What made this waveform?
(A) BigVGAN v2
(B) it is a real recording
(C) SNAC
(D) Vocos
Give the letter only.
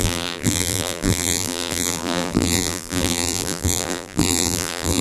A